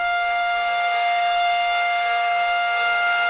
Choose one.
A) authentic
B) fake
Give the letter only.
B